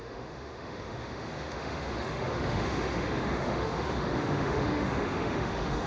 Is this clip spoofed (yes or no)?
yes